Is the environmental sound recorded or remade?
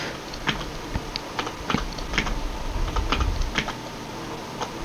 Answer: recorded